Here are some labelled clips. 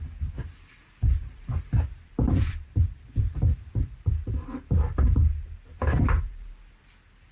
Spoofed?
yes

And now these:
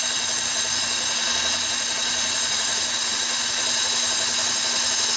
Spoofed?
no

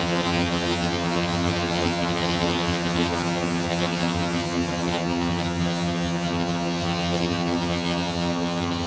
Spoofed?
yes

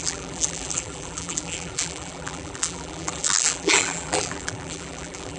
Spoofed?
yes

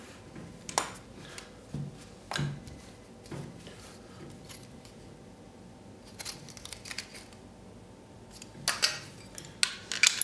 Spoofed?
no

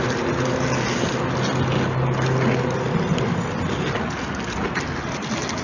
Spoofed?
no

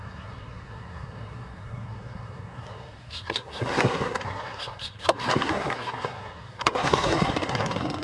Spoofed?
yes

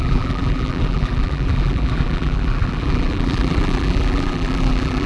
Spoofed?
yes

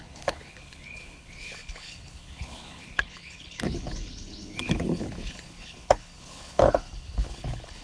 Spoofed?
yes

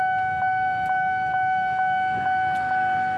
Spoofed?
no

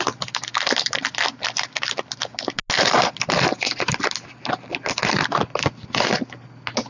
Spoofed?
no